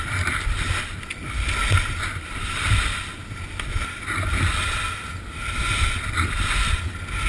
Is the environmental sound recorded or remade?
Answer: recorded